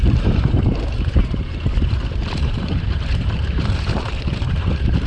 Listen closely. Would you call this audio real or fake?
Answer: fake